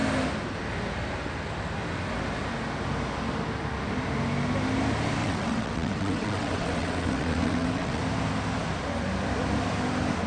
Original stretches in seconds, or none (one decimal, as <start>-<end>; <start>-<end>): 0.0-5.2; 8.0-10.3